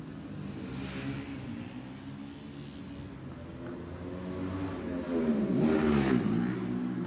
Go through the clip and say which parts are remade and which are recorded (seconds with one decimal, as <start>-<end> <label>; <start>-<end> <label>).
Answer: 0.0-7.1 recorded